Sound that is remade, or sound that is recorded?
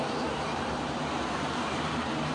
remade